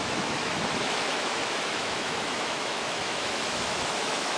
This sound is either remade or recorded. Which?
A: remade